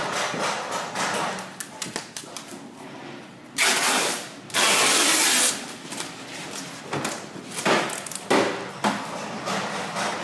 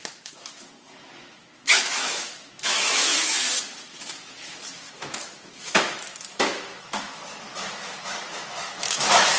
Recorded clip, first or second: first